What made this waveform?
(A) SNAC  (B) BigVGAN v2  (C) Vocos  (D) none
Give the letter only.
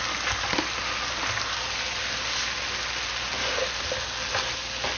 D